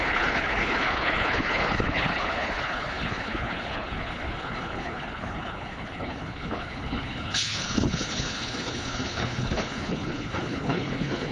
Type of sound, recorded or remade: remade